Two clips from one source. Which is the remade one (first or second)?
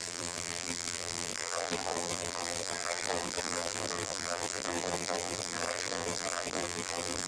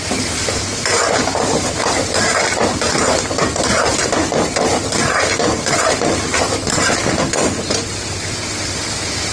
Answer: first